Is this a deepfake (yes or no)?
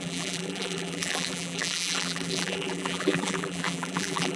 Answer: yes